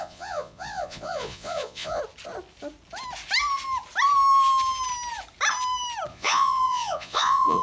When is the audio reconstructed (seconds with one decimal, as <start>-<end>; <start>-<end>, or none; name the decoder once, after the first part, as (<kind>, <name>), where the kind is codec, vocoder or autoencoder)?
0.0-2.0 (vocoder, Vocos); 6.1-7.6